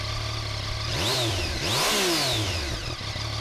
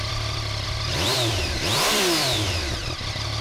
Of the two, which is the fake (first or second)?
second